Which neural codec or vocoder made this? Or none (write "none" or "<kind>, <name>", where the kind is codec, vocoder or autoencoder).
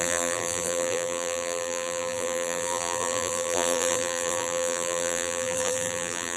vocoder, BigVGAN v2